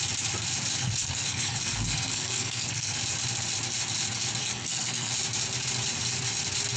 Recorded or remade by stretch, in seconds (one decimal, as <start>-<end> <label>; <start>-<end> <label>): 0.0-0.8 recorded; 0.8-3.0 remade; 3.0-4.4 recorded; 4.4-5.1 remade; 5.1-6.8 recorded

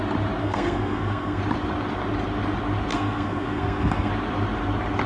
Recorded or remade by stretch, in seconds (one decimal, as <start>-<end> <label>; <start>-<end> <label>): 0.0-0.4 recorded; 0.4-1.4 remade; 1.4-2.9 recorded; 2.9-4.1 remade; 4.1-5.1 recorded